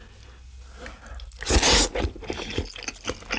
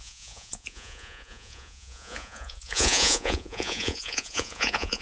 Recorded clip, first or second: first